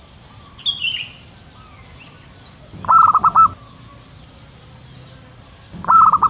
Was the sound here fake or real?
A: real